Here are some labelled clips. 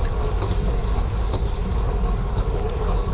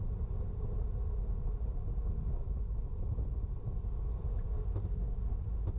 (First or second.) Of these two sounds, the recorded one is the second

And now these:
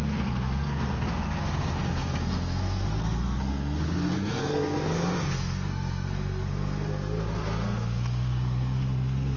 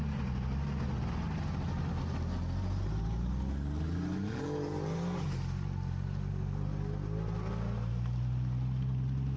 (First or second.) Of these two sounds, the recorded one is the second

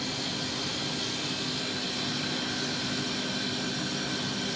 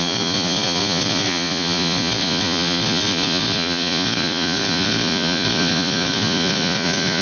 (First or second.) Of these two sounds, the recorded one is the first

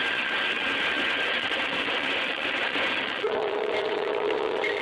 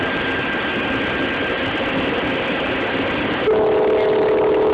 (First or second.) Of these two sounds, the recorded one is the second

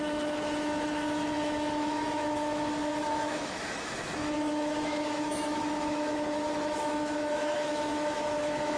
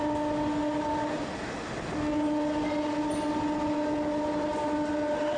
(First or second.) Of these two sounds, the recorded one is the second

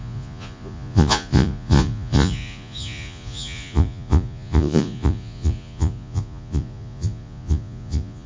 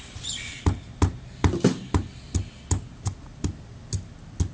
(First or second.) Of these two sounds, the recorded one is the second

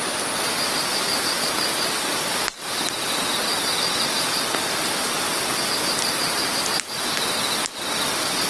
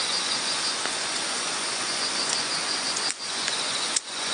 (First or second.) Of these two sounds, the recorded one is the first